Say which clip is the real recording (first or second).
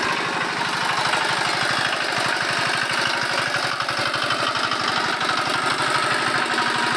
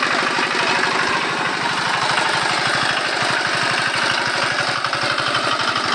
first